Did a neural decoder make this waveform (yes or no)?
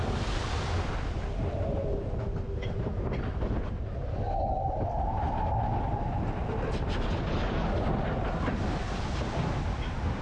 no